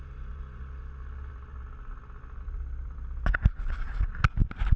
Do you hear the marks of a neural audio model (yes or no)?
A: no